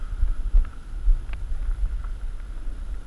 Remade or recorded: recorded